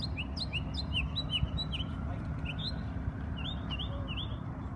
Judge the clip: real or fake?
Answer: real